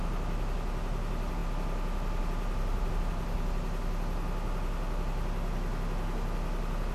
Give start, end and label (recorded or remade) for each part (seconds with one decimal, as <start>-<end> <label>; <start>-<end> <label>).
0.0-6.9 recorded